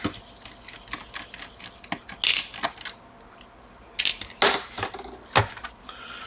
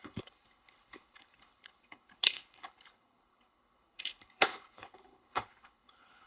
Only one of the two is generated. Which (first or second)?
second